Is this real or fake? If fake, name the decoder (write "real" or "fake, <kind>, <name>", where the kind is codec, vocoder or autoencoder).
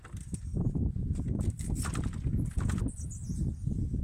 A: real